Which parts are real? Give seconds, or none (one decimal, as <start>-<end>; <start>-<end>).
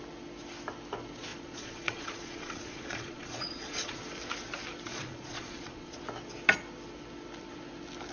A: 0.0-1.3; 4.0-4.9; 6.0-8.1